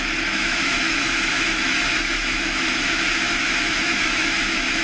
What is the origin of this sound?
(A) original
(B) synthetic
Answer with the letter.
B